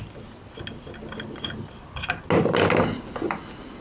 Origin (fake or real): real